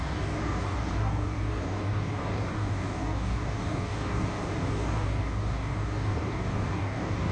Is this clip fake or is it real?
fake